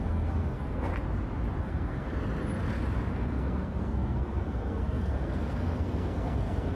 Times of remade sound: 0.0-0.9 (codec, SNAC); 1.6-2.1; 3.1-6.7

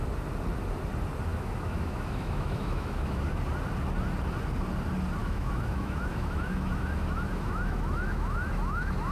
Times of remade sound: 1.3-3.2 (autoencoder, DAC-VAE); 5.2-9.1